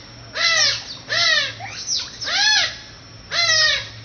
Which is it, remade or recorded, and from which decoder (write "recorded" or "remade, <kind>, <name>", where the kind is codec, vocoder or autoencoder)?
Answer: recorded